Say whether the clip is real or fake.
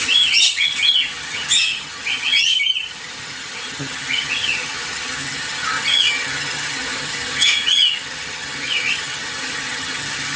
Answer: fake